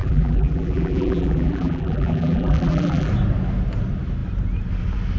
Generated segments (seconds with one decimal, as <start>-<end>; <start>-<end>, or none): 0.0-3.1